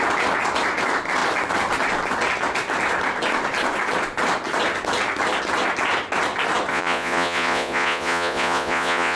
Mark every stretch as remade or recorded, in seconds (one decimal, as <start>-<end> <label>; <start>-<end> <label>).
0.0-6.7 recorded; 6.7-9.2 remade